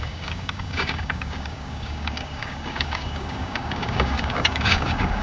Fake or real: fake